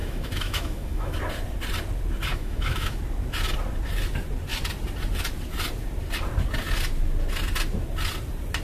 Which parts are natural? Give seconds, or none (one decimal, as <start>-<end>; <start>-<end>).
1.2-2.3; 3.0-8.6